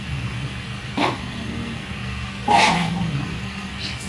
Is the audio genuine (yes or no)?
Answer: no